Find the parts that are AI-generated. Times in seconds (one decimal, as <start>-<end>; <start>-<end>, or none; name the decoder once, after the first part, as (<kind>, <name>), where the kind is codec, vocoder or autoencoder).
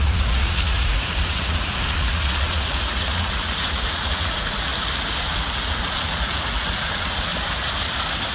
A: 0.0-4.7 (vocoder, Vocos); 5.2-7.3